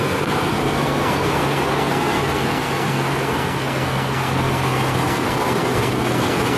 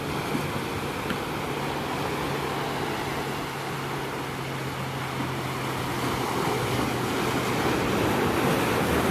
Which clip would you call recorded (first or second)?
second